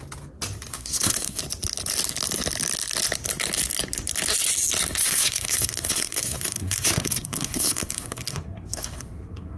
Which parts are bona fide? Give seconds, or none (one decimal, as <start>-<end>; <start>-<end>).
0.0-0.7; 1.4-5.0